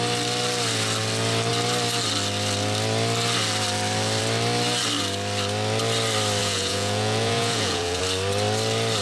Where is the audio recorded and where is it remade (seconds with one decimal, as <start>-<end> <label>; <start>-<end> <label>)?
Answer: 0.0-6.4 recorded; 6.4-8.0 remade; 8.0-9.0 recorded